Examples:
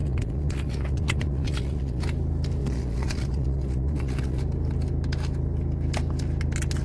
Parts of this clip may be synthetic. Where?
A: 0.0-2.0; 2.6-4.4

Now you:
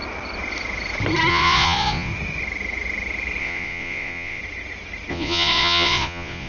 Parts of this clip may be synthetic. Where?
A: 1.3-2.1; 3.4-4.4; 5.1-6.5

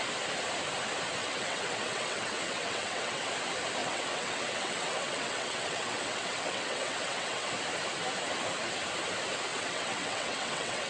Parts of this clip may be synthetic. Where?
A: 1.2-3.3; 3.8-7.5; 9.5-10.9

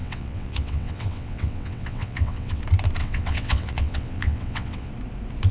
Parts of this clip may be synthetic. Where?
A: 0.0-2.6; 3.0-4.9

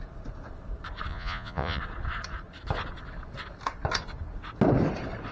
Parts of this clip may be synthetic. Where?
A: 1.1-1.8